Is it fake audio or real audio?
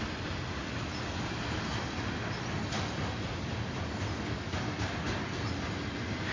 real